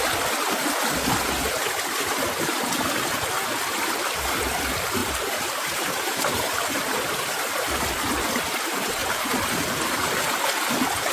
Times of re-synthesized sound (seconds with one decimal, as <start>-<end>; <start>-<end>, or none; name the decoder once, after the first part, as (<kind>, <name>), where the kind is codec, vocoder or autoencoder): 5.0-7.7 (vocoder, BigVGAN v2); 9.0-10.1